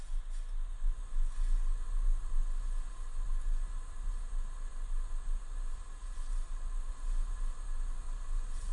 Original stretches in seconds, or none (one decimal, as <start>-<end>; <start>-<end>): 0.0-8.7